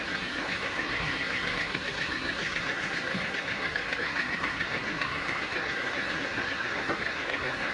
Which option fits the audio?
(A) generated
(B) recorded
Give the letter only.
A